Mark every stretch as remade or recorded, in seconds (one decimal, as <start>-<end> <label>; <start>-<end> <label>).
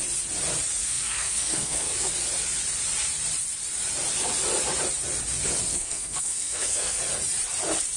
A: 0.0-0.8 recorded; 0.8-2.1 remade; 2.1-5.7 recorded; 5.7-7.0 remade; 7.0-8.0 recorded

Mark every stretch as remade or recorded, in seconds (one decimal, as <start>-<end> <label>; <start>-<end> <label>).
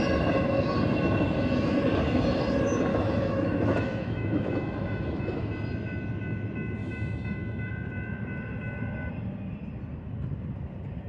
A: 0.0-2.9 recorded; 2.9-5.5 remade; 5.5-6.8 recorded; 6.8-7.7 remade; 7.7-11.1 recorded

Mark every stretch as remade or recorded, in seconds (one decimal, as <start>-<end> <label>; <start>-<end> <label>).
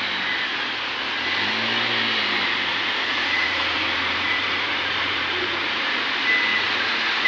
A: 0.0-2.7 recorded; 2.7-6.0 remade; 6.0-6.5 recorded; 6.5-7.3 remade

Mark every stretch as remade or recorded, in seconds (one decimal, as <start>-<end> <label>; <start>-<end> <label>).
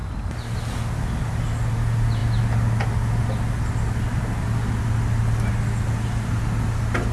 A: 0.0-7.1 recorded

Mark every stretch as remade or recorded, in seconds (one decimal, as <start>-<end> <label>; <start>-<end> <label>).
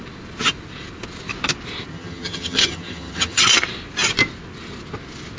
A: 0.0-1.9 recorded; 1.9-3.4 remade; 3.4-5.4 recorded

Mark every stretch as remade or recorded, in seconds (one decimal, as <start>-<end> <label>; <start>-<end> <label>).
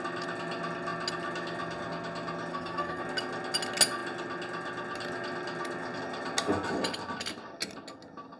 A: 0.0-2.5 recorded; 2.5-3.0 remade; 3.0-8.4 recorded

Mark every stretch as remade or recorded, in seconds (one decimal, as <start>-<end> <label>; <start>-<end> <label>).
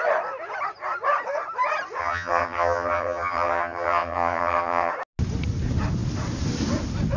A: 0.0-2.0 recorded; 2.0-4.9 remade; 4.9-7.2 recorded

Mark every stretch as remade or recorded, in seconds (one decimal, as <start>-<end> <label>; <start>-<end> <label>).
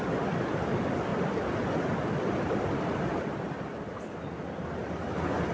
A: 0.0-5.5 recorded